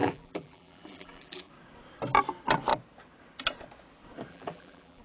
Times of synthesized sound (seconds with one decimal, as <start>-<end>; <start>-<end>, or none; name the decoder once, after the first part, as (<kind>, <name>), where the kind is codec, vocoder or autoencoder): 0.0-1.5 (vocoder, BigVGAN v2); 4.3-5.0